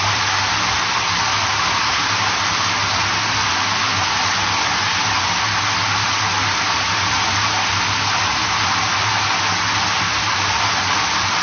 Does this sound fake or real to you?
real